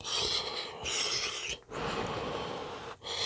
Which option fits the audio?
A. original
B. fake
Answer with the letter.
A